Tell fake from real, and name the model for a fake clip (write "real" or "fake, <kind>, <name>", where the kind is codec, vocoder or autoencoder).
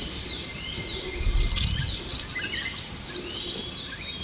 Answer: real